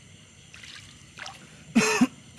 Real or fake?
real